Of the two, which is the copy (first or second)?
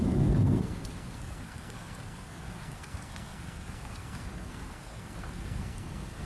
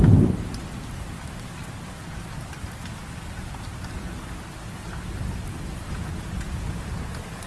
first